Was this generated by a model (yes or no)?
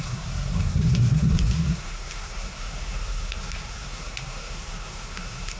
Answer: yes